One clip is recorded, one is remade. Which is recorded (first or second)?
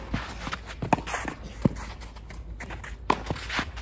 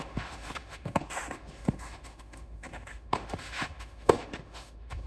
first